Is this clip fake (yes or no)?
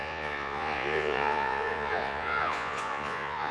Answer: yes